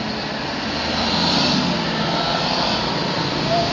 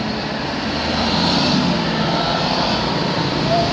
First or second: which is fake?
second